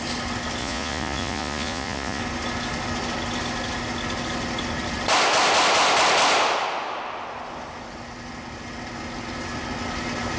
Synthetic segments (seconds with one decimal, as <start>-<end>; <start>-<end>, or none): 0.6-2.2